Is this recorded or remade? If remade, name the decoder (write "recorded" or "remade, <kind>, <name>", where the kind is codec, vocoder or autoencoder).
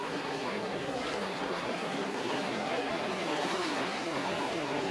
remade, codec, SNAC